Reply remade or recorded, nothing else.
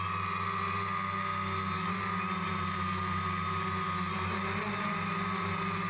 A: recorded